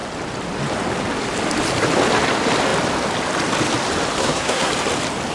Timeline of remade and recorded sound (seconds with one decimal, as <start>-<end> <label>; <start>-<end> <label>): 0.0-4.2 recorded; 4.2-4.7 remade; 4.7-5.3 recorded